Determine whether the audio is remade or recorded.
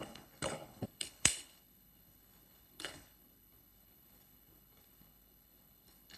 remade